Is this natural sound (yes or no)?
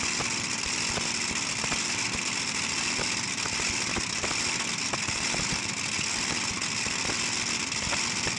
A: yes